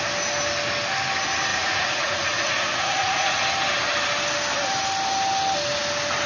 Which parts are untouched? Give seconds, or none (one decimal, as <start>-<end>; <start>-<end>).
0.0-1.5; 3.4-6.3